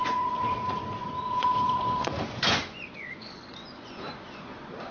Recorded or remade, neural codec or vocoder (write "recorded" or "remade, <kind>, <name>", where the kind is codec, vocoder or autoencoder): remade, vocoder, Vocos